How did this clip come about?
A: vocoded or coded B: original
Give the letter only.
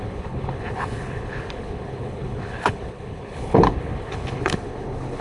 A